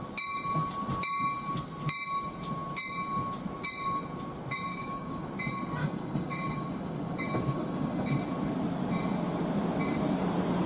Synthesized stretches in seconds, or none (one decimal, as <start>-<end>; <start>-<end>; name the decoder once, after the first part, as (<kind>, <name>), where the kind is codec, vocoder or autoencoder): 4.7-5.3 (codec, DAC); 5.8-8.1